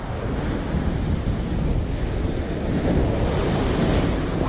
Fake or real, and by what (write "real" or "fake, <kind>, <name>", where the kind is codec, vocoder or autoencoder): real